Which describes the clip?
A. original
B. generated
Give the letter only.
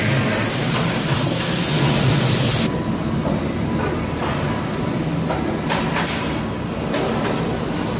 A